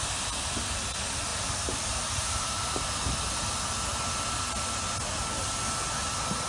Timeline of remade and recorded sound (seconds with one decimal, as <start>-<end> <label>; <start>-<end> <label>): 0.0-1.3 recorded; 1.3-2.7 remade; 2.7-6.5 recorded